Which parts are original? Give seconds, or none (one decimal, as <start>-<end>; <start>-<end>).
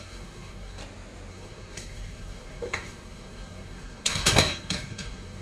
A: 0.8-1.3